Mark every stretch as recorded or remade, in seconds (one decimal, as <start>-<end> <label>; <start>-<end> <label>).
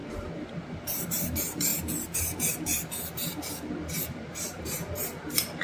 0.0-5.6 remade